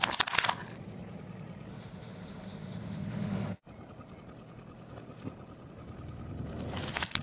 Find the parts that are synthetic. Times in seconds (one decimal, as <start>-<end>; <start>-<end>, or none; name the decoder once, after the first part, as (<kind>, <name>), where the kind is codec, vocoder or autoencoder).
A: 1.7-3.6 (autoencoder, DAC-VAE)